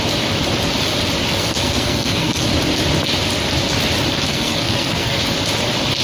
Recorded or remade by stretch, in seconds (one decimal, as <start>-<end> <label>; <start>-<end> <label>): 0.0-1.3 recorded; 1.3-2.5 remade; 2.5-4.3 recorded; 4.3-5.2 remade; 5.2-6.0 recorded